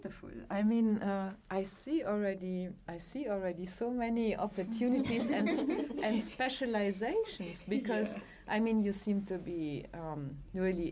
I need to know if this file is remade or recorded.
recorded